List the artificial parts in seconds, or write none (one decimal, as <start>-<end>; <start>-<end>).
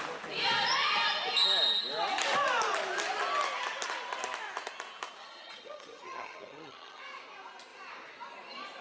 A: 5.2-7.0